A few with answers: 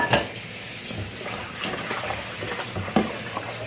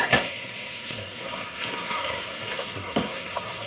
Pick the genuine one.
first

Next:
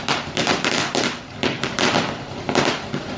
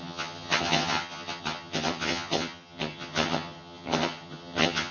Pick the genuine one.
first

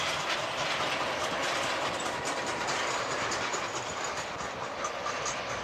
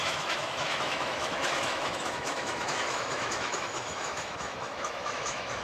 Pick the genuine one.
first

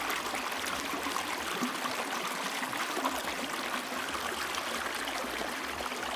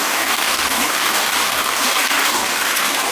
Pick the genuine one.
first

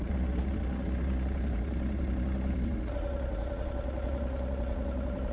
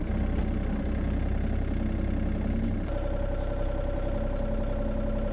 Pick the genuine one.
second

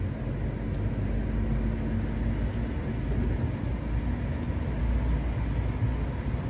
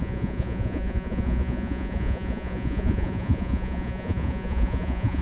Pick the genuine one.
first